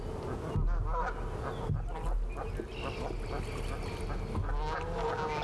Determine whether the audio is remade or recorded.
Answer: recorded